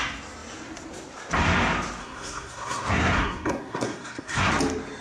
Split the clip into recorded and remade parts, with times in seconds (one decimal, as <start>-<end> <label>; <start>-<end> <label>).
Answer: 0.0-2.0 recorded; 2.0-4.5 remade; 4.5-5.0 recorded